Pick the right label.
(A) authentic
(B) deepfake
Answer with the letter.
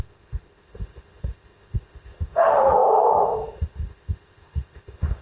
B